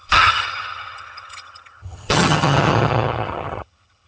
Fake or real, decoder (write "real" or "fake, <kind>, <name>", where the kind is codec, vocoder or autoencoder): fake, vocoder, HiFi-GAN